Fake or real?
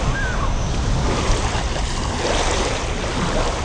real